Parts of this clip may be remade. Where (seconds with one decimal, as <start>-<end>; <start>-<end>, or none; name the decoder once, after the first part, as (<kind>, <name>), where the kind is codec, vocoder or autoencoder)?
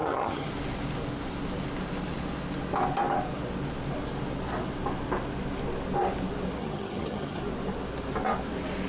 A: 0.0-0.5 (vocoder, HiFi-GAN); 6.6-7.4